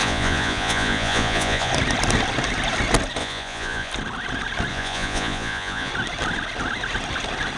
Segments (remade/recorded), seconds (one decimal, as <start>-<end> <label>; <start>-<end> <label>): 0.0-1.7 remade; 1.7-3.2 recorded; 3.2-3.9 remade; 3.9-4.7 recorded; 4.7-5.9 remade; 5.9-7.6 recorded